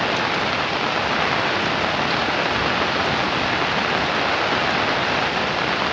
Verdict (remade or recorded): recorded